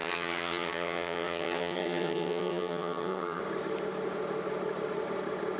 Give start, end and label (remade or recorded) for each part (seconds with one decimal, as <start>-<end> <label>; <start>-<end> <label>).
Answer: 0.0-3.4 remade; 3.4-5.6 recorded